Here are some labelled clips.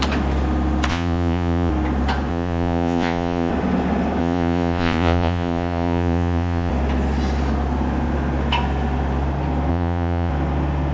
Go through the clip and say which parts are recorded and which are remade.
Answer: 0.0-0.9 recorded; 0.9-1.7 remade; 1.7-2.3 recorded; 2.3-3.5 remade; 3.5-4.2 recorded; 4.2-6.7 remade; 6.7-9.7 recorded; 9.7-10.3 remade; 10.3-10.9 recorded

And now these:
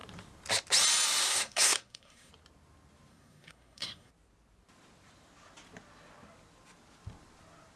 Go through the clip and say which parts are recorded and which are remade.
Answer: 0.0-1.2 recorded; 1.2-2.3 remade; 2.3-3.1 recorded; 3.1-4.1 remade; 4.1-7.8 recorded

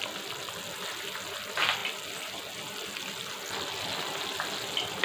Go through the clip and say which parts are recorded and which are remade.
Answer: 0.0-5.0 recorded

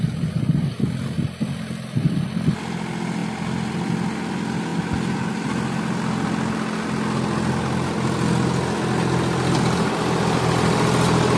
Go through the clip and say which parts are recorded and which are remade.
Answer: 0.0-11.4 recorded

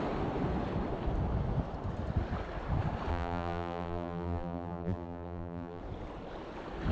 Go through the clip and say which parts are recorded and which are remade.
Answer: 0.0-3.1 recorded; 3.1-5.8 remade; 5.8-6.9 recorded

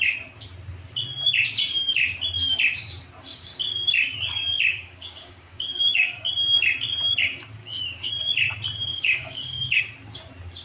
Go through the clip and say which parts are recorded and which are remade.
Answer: 0.0-3.3 recorded; 3.3-3.9 remade; 3.9-4.7 recorded; 4.7-6.3 remade; 6.3-7.6 recorded; 7.6-8.1 remade; 8.1-8.9 recorded; 8.9-9.8 remade; 9.8-10.6 recorded

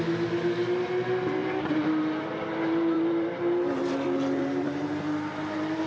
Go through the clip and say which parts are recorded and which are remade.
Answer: 0.0-1.4 recorded; 1.4-4.9 remade; 4.9-5.9 recorded